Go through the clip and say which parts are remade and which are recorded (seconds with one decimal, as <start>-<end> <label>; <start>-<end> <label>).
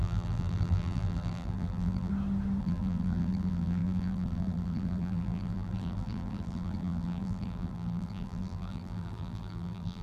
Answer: 0.0-2.1 remade; 2.1-2.6 recorded; 2.6-10.0 remade